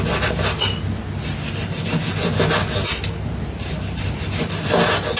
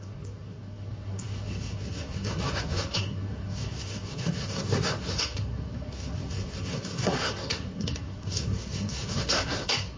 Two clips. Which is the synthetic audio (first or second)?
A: second